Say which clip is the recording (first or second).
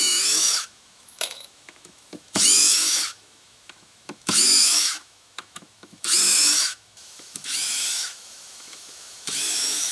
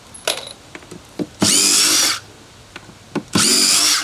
second